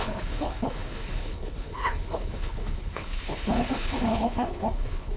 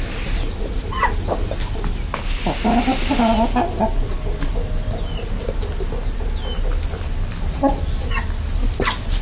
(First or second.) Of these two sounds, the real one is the second